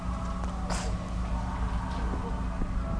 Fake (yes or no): no